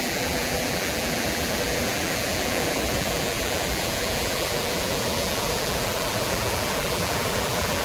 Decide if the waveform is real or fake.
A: fake